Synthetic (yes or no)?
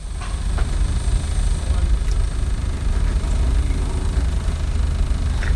no